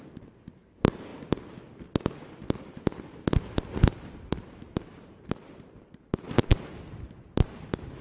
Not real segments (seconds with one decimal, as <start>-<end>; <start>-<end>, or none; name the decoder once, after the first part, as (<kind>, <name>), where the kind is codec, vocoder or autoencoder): 0.0-1.1 (vocoder, BigVGAN v2); 5.5-6.5; 7.1-8.0